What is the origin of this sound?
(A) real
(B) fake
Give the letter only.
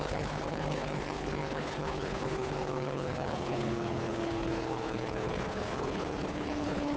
B